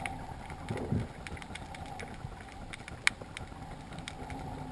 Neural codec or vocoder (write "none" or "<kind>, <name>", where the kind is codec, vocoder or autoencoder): none